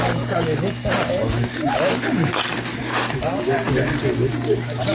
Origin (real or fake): real